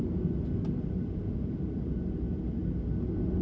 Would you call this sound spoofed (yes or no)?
no